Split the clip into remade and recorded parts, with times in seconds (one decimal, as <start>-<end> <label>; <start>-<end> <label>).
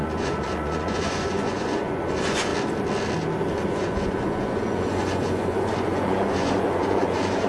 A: 0.0-2.5 remade; 2.5-3.7 recorded; 3.7-7.5 remade